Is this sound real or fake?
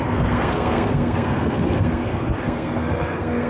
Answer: fake